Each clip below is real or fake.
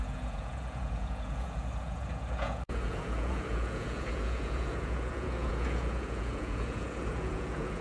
fake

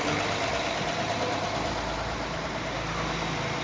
real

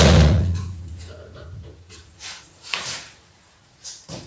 fake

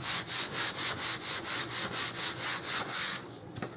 fake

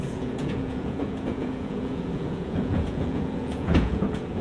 fake